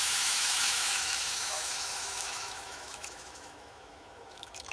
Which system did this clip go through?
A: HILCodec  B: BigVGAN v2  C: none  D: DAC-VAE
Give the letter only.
D